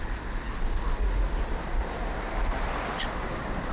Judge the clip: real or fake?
real